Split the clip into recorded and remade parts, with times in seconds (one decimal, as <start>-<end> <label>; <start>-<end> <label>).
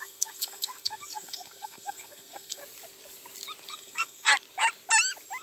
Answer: 0.0-2.6 remade; 2.6-3.7 recorded; 3.7-4.3 remade; 4.3-5.4 recorded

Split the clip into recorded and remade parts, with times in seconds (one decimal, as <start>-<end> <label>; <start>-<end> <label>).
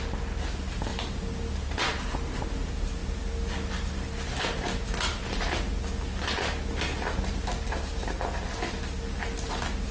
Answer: 0.0-9.9 recorded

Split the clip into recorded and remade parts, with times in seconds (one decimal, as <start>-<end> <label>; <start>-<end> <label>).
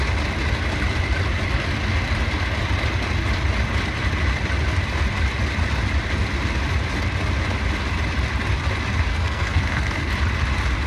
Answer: 0.0-9.1 recorded; 9.1-10.1 remade; 10.1-10.9 recorded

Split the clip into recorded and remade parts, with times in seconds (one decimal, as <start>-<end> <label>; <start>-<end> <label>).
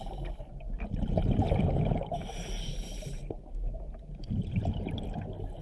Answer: 0.0-5.6 recorded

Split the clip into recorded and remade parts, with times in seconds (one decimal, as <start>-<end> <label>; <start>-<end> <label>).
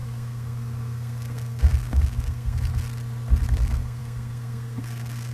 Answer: 0.0-2.7 remade; 2.7-3.5 recorded; 3.5-5.3 remade